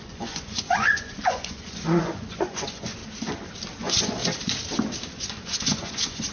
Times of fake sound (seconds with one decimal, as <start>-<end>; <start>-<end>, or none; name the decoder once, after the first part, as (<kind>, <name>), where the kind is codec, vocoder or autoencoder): 0.0-3.0 (vocoder, Vocos); 3.8-4.2; 5.1-6.3

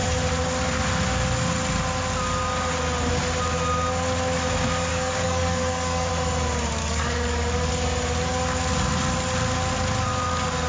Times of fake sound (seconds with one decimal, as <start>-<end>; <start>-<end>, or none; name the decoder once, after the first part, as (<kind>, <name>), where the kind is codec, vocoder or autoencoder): 4.9-6.1 (codec, DAC); 6.8-7.7

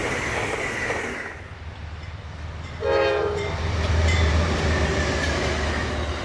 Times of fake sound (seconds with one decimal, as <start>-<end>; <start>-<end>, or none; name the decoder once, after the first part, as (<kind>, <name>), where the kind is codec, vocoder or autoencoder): 3.4-4.9 (vocoder, BigVGAN v2)

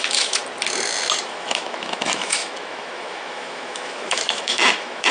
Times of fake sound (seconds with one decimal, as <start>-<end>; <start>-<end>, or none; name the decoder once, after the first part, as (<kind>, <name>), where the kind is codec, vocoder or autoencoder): 0.0-0.4 (autoencoder, DAC-VAE); 1.2-5.1

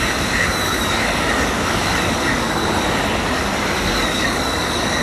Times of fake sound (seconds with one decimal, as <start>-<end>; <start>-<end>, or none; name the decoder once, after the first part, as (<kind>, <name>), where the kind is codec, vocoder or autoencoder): 0.0-2.6 (codec, DAC); 3.9-5.0

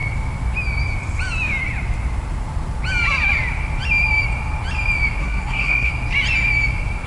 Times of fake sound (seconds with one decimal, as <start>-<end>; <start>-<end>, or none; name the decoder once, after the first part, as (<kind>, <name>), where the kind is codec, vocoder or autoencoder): 5.2-5.9 (codec, SNAC)

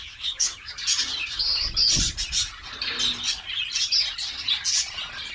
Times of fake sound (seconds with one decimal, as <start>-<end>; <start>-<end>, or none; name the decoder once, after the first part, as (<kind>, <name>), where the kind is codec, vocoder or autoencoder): 0.0-0.7 (autoencoder, DAC-VAE)

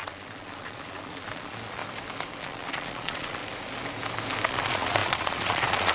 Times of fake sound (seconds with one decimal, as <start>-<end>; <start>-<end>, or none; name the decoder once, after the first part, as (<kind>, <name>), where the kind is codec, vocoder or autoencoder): 0.0-1.8 (vocoder, Vocos); 2.4-3.4; 4.5-5.9